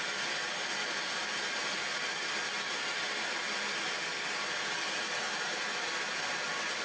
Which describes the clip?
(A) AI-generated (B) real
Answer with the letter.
A